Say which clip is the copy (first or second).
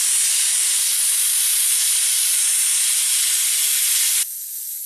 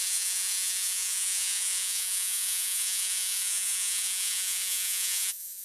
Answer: second